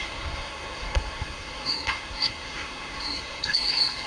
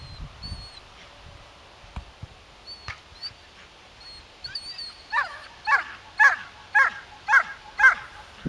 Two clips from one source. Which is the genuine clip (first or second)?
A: second